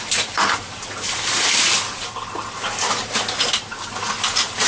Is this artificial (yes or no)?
no